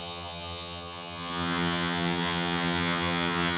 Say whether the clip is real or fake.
fake